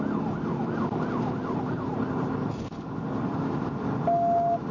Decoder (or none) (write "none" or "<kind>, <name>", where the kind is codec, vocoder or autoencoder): none